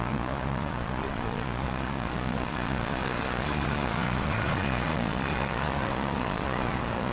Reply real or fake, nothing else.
fake